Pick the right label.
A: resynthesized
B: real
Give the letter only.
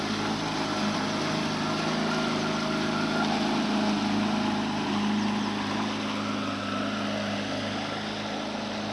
B